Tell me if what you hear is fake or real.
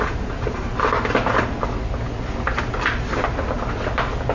real